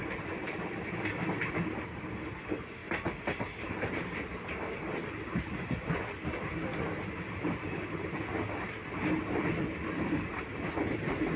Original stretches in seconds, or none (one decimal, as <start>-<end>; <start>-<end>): 0.0-11.4